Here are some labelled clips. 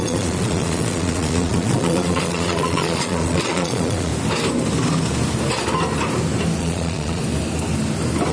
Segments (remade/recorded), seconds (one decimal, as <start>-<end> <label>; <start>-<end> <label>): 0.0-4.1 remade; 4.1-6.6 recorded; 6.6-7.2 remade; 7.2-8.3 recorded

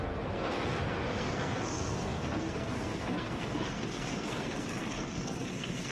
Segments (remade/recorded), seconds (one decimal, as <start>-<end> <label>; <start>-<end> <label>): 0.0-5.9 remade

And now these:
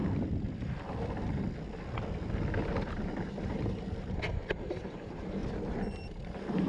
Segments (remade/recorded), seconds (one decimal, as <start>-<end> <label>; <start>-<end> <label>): 0.0-2.9 recorded; 2.9-5.4 remade; 5.4-6.2 recorded; 6.2-6.7 remade